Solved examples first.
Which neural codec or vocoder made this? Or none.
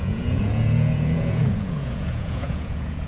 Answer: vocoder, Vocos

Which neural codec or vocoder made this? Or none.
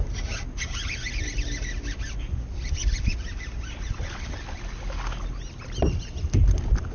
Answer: none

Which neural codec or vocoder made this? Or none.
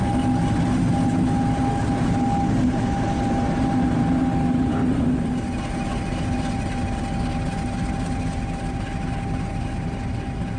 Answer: none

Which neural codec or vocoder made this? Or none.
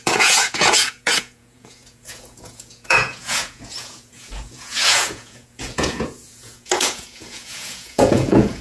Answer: vocoder, Vocos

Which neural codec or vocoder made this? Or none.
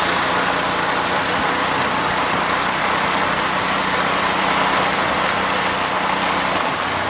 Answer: none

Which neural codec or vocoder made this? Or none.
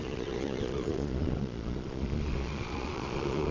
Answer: vocoder, Vocos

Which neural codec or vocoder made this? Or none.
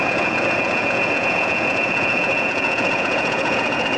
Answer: vocoder, Vocos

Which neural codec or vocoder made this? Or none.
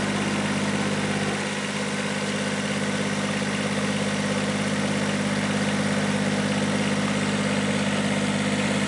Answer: none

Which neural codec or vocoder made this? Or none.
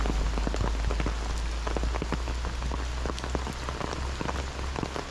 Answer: none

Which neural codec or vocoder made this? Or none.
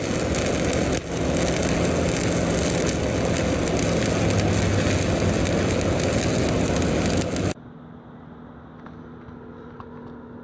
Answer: none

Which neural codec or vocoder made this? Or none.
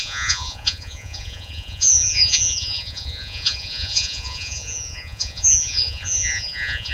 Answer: vocoder, Vocos